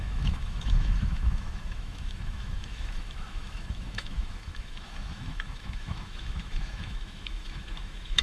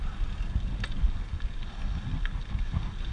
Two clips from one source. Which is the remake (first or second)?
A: first